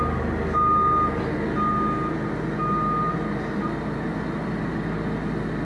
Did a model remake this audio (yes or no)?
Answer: no